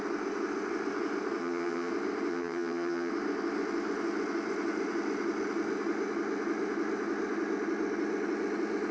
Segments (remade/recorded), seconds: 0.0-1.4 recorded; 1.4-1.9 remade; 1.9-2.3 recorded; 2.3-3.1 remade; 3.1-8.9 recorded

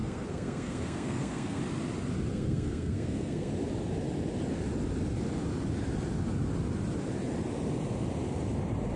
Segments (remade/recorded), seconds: 0.0-1.6 remade; 1.6-2.3 recorded; 2.3-3.5 remade; 3.5-9.0 recorded

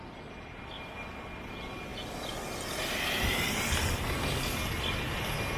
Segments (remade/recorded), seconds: 0.0-5.6 recorded

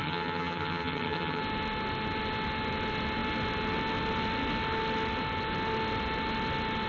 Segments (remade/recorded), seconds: 0.0-1.4 remade; 1.4-6.9 recorded

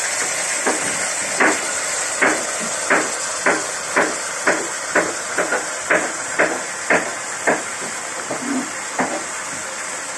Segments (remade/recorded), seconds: 0.0-10.2 recorded

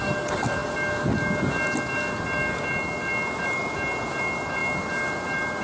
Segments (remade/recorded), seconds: 0.0-5.6 recorded